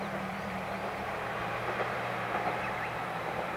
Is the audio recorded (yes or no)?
no